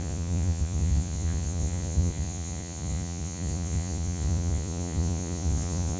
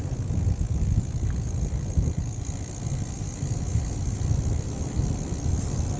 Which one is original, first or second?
second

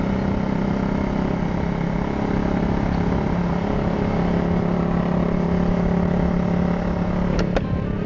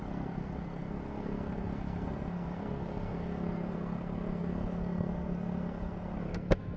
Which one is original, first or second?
first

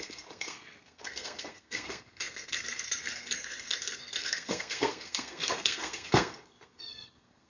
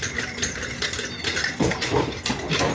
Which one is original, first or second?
second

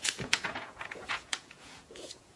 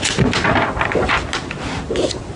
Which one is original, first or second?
second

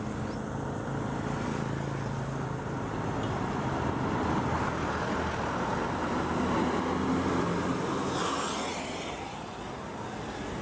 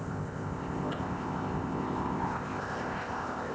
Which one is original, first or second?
first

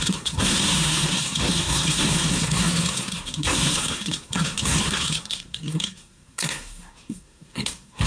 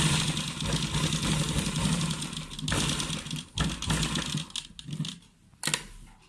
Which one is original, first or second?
second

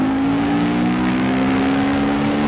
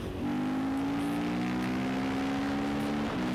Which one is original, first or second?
second